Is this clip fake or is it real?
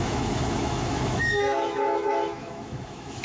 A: fake